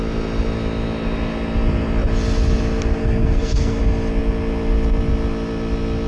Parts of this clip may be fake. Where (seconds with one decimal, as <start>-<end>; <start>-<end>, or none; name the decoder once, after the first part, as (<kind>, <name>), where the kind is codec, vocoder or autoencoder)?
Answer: 3.0-3.8 (codec, SNAC)